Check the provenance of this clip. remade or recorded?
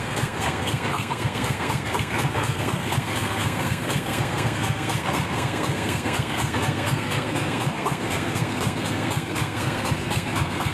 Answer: remade